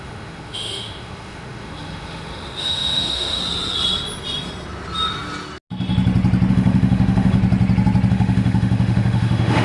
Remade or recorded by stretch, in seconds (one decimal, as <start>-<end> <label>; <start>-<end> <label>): 0.0-3.4 remade; 3.4-6.5 recorded; 6.5-7.4 remade; 7.4-8.1 recorded; 8.1-9.6 remade